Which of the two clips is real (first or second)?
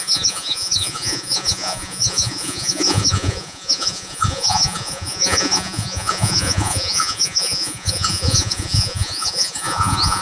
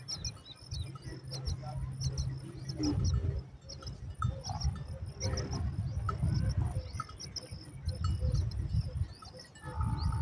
second